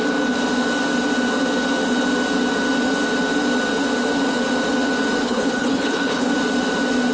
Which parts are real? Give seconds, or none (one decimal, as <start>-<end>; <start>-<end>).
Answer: 0.0-5.2; 6.3-7.1